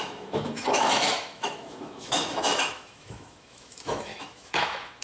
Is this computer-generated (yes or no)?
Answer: yes